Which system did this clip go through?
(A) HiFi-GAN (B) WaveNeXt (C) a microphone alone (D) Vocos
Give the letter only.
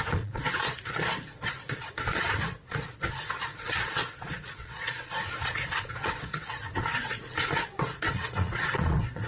D